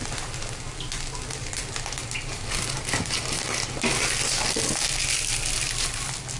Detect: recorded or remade recorded